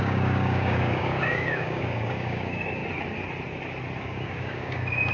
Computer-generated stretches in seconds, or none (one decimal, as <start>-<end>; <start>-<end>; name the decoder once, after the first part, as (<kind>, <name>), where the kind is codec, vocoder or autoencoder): 0.0-2.8 (codec, DAC); 4.0-5.1